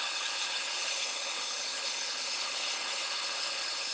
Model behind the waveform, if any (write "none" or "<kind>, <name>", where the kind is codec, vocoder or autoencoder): codec, HILCodec